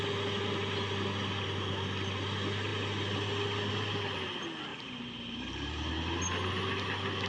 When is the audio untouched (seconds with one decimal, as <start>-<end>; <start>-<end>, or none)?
0.0-4.7; 5.9-7.3